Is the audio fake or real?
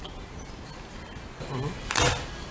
real